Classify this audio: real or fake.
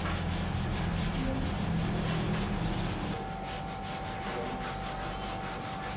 real